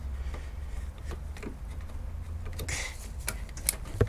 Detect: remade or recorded recorded